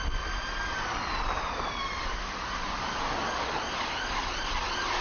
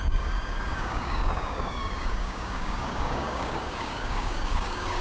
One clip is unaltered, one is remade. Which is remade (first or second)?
second